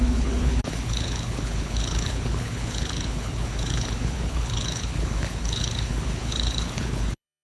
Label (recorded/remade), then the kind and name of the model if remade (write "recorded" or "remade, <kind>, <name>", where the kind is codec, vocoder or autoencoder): remade, codec, HILCodec